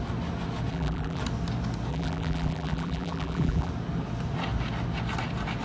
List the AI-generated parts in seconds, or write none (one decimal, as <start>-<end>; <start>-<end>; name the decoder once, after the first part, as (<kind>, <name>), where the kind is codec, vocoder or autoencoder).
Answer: 0.7-1.2 (vocoder, BigVGAN v2); 1.9-3.7